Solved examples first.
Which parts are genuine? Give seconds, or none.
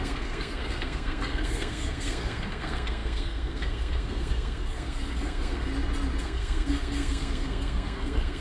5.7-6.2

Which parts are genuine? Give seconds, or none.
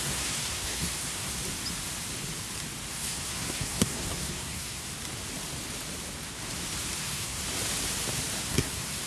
1.3-2.9; 4.9-7.0; 7.4-8.4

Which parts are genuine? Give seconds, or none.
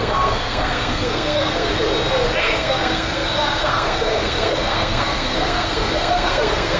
1.7-2.4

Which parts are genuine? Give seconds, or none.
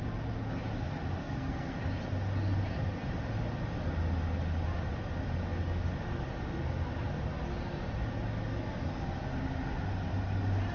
0.0-1.2; 1.8-10.7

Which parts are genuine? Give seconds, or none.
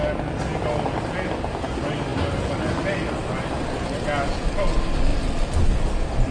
0.0-6.3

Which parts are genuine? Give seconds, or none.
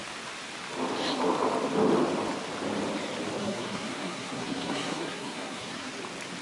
0.0-3.4; 5.9-6.4